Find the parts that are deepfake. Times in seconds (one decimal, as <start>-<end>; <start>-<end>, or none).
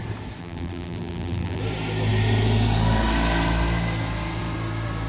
0.4-1.6